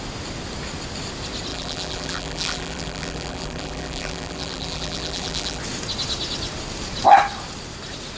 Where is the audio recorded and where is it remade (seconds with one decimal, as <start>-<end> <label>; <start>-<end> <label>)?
0.0-1.5 recorded; 1.5-5.6 remade; 5.6-8.2 recorded